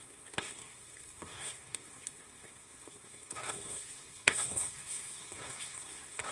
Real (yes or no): no